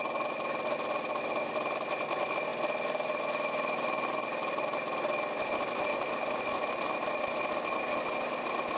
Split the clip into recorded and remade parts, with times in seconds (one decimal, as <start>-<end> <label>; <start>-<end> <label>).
0.0-8.8 recorded